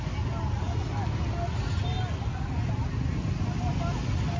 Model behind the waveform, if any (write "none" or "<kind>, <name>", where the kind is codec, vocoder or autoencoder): none